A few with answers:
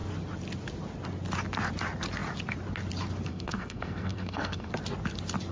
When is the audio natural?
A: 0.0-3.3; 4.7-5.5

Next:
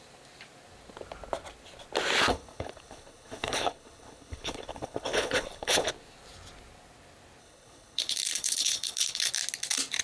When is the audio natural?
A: 0.0-2.3; 5.9-7.4; 9.3-10.0

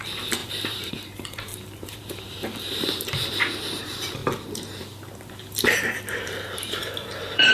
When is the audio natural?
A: 4.2-4.8

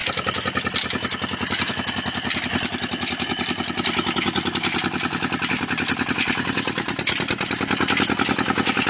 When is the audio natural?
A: 0.0-8.9

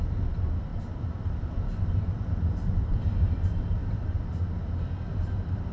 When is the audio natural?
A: 0.0-0.7; 3.4-3.8; 4.3-5.7

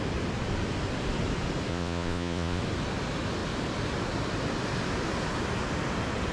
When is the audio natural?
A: 0.0-1.7; 2.6-6.3

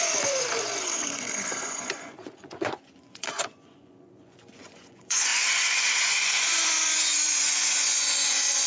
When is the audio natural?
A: none

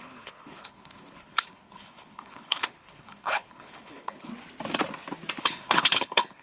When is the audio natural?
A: 4.3-5.4